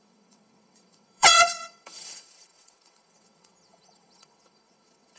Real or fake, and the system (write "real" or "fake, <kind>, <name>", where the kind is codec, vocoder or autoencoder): fake, vocoder, WaveNeXt